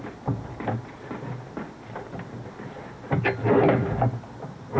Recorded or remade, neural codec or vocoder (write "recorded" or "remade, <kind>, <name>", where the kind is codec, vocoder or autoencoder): recorded